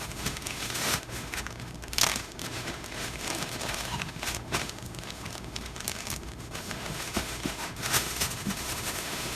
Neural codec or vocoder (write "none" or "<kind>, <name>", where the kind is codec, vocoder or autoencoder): autoencoder, DAC-VAE